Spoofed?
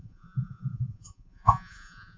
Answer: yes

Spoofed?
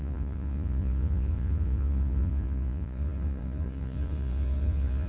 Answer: yes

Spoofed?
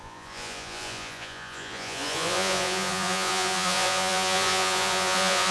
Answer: yes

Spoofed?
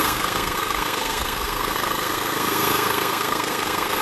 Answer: yes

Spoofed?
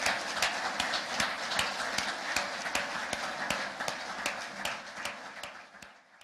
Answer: no